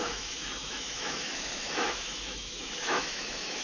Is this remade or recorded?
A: remade